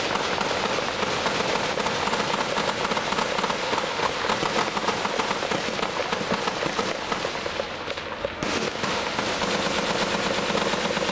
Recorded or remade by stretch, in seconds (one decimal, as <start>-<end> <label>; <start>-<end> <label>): 0.0-3.6 recorded; 3.6-4.1 remade; 4.1-8.2 recorded; 8.2-9.2 remade; 9.2-11.1 recorded

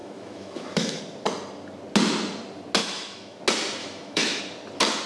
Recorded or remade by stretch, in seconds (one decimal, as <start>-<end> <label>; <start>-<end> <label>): 0.0-1.0 remade; 1.0-2.8 recorded; 2.8-3.4 remade; 3.4-3.8 recorded; 3.8-4.4 remade; 4.4-5.1 recorded

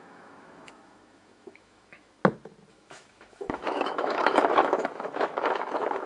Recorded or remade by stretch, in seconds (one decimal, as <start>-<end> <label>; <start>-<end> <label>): 0.0-2.2 remade; 2.2-2.7 recorded; 2.7-6.1 remade